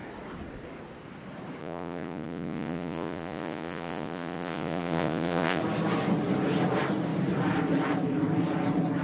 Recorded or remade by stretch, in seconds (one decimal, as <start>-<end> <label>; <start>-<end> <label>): 0.0-1.6 recorded; 1.6-5.6 remade; 5.6-9.0 recorded